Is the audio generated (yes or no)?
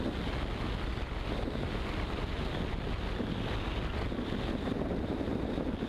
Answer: no